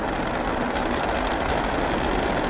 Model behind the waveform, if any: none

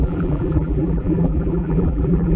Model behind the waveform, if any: vocoder, BigVGAN v2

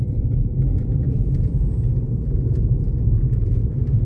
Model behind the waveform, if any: vocoder, BigVGAN v2